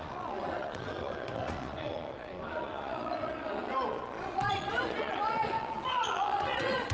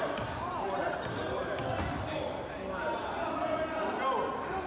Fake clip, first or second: first